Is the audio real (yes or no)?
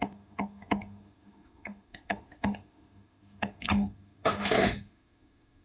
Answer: no